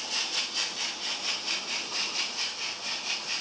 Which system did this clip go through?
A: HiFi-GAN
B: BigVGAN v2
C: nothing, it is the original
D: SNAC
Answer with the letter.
C